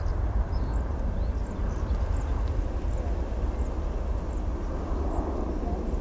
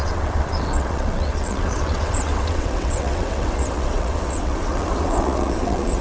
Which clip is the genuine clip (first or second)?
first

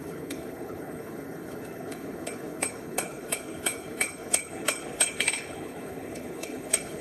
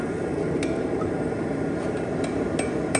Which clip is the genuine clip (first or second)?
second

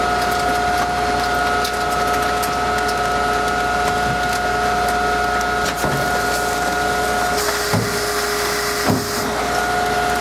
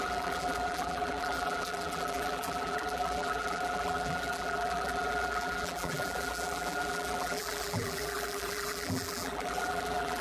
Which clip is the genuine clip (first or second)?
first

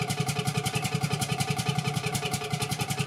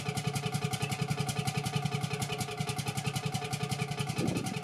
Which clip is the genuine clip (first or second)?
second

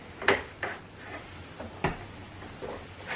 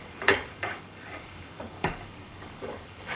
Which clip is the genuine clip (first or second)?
first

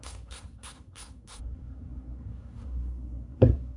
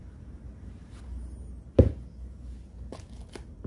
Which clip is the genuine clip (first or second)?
second